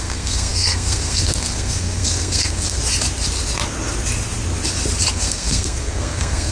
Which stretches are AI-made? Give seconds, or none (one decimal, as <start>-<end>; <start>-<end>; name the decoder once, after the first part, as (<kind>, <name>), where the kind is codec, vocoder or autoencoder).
0.0-2.8 (codec, SNAC); 5.1-6.5